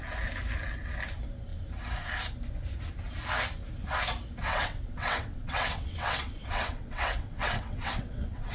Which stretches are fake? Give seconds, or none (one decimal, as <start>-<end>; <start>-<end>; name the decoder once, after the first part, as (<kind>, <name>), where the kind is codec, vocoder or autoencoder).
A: 4.5-8.5 (vocoder, WaveNeXt)